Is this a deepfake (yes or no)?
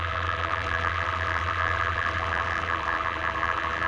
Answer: yes